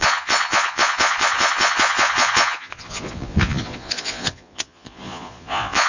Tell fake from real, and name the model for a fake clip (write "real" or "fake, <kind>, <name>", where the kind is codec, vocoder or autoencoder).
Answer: fake, vocoder, Vocos